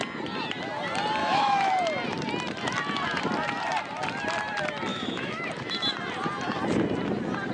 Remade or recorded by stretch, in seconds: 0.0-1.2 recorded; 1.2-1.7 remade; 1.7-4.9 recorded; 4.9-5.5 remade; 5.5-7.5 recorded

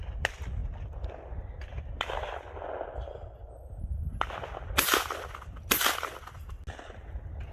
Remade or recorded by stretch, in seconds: 0.0-7.5 recorded

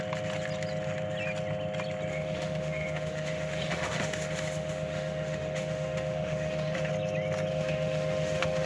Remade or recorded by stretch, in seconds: 0.0-2.1 recorded; 2.1-6.9 remade; 6.9-7.5 recorded; 7.5-8.7 remade

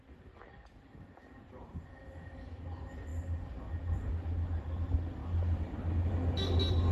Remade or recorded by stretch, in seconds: 0.0-1.9 recorded; 1.9-2.6 remade; 2.6-6.9 recorded

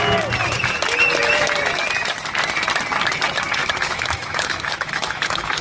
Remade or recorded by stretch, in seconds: 0.0-3.6 recorded; 3.6-5.6 remade

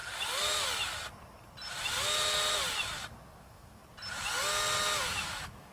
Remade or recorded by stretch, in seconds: 0.0-3.4 recorded; 3.4-3.8 remade; 3.8-5.0 recorded; 5.0-5.7 remade